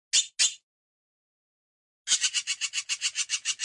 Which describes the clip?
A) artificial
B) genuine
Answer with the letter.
B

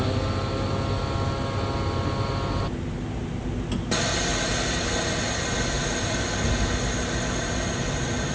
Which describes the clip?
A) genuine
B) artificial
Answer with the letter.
A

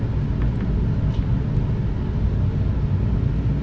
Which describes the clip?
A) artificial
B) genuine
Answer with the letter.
B